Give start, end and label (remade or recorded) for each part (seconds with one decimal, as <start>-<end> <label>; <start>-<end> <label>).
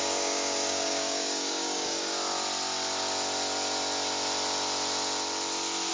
0.0-2.1 remade; 2.1-5.9 recorded